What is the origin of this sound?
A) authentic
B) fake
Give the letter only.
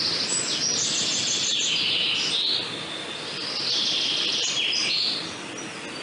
A